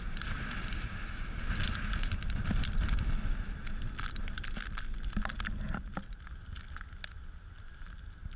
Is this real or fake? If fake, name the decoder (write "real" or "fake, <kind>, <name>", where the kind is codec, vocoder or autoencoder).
real